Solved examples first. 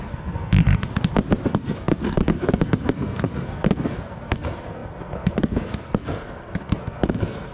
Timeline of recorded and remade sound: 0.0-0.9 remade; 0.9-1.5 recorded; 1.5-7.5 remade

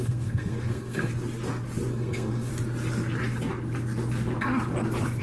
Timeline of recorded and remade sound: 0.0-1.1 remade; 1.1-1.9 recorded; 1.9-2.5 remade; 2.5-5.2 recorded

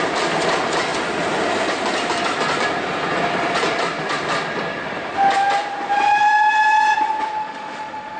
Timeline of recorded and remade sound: 0.0-7.4 recorded; 7.4-8.2 remade

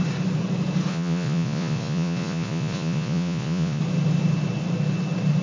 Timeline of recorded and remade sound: 0.0-0.9 recorded; 0.9-3.8 remade; 3.8-5.4 recorded